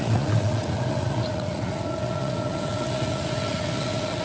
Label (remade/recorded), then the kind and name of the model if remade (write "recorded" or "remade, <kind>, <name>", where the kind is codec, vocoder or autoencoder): remade, vocoder, Vocos